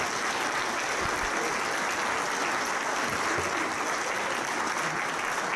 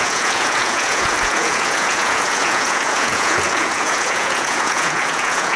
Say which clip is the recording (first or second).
first